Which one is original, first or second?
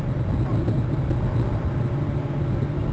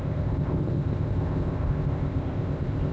first